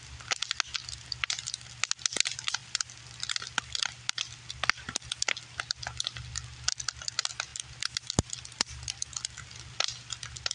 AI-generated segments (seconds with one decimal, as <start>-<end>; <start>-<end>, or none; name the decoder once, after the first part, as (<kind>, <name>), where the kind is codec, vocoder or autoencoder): none